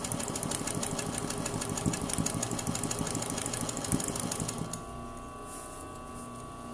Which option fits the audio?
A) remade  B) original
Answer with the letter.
B